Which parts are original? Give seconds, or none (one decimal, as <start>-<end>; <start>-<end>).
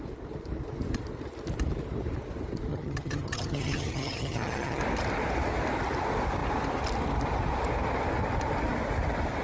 0.0-2.7; 4.8-9.4